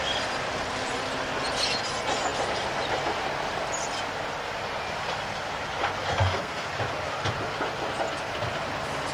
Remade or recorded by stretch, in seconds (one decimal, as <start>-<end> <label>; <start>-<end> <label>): 0.0-6.1 recorded; 6.1-6.7 remade; 6.7-9.1 recorded